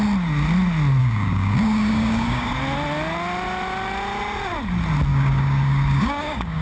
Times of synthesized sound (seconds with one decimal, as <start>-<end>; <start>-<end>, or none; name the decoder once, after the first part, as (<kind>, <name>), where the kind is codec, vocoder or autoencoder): 1.0-2.6 (codec, DAC); 5.1-6.6